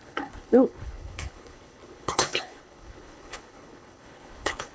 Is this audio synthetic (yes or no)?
yes